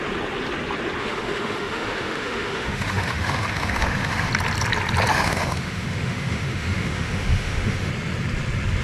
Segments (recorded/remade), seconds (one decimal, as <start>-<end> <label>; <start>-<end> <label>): 0.0-1.0 recorded; 1.0-4.3 remade; 4.3-5.1 recorded; 5.1-7.9 remade; 7.9-8.8 recorded